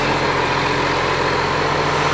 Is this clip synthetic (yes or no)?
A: no